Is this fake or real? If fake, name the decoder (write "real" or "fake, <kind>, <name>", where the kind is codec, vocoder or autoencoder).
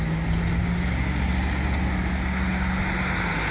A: real